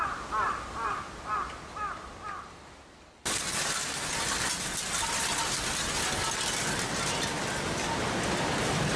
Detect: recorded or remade recorded